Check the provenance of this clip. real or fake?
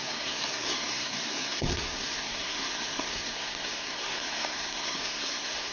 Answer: fake